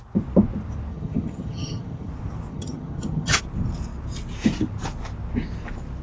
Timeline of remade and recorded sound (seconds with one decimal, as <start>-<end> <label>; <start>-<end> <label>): 0.0-0.9 recorded; 0.9-2.1 remade; 2.1-2.5 recorded; 2.5-3.4 remade; 3.4-6.0 recorded

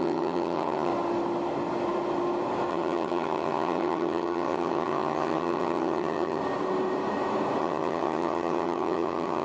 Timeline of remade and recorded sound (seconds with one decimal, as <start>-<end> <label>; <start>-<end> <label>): 0.0-0.9 remade; 0.9-2.7 recorded; 2.7-6.4 remade; 6.4-7.6 recorded; 7.6-9.4 remade

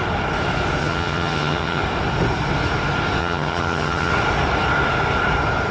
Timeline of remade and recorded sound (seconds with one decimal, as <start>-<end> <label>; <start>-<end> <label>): 0.0-0.8 recorded; 0.8-1.8 remade; 1.8-3.2 recorded; 3.2-4.1 remade; 4.1-5.7 recorded

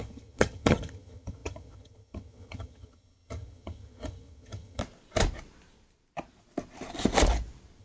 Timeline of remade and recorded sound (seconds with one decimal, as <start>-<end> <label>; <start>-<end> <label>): 0.0-4.8 remade; 4.8-7.8 recorded

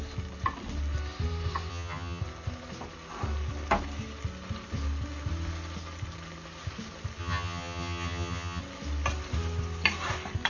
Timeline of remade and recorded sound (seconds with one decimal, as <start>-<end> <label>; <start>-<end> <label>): 0.0-1.7 recorded; 1.7-2.2 remade; 2.2-7.2 recorded; 7.2-8.6 remade; 8.6-10.5 recorded

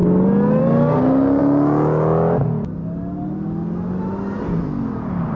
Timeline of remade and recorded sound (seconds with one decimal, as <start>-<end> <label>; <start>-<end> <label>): 0.0-5.4 recorded

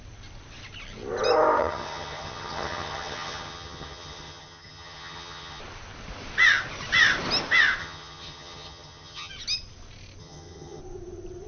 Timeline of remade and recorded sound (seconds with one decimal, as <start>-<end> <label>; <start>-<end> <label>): 0.0-1.6 recorded; 1.6-5.6 remade; 5.6-7.8 recorded; 7.8-9.3 remade; 9.3-10.2 recorded; 10.2-10.8 remade; 10.8-11.5 recorded